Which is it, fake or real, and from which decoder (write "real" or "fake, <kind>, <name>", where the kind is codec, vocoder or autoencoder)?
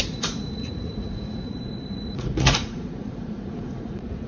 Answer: fake, vocoder, Vocos